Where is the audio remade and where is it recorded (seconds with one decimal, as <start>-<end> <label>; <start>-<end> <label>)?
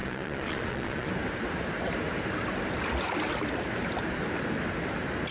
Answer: 0.0-1.1 remade; 1.1-5.3 recorded